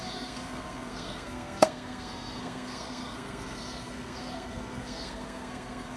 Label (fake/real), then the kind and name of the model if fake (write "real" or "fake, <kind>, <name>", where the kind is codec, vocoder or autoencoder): fake, codec, SNAC